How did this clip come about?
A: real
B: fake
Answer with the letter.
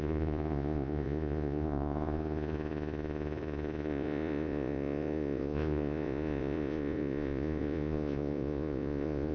B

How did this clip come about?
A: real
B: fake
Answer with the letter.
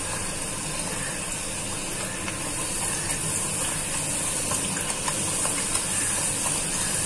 A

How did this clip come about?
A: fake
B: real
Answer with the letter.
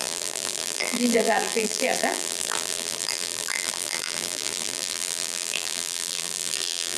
A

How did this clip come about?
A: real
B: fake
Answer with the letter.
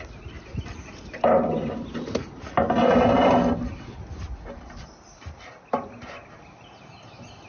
A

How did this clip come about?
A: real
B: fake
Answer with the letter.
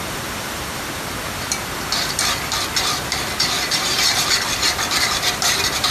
B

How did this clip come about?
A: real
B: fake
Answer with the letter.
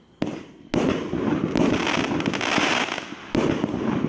A